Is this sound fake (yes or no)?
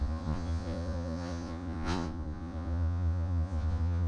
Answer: yes